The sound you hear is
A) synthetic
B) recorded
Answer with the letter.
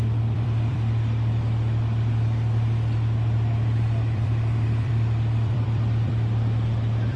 A